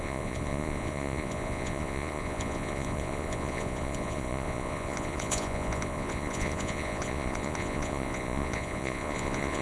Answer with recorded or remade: remade